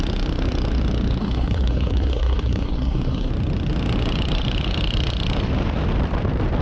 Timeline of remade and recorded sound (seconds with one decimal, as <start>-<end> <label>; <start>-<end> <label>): 0.0-1.2 recorded; 1.2-3.3 remade; 3.3-6.6 recorded